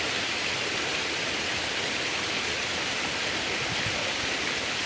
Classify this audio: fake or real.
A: real